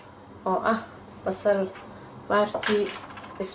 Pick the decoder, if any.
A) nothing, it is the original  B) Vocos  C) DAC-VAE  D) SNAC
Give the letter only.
A